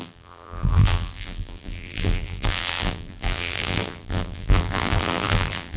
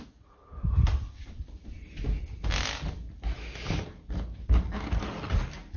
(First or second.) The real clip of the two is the second